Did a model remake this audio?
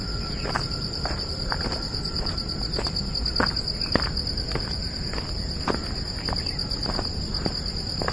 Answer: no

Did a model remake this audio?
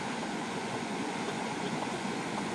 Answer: yes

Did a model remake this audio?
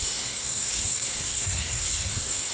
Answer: yes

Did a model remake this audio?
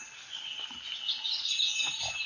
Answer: no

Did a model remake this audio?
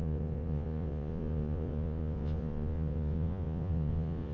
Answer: yes